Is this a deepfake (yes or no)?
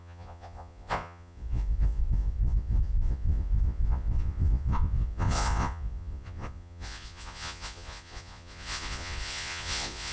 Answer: yes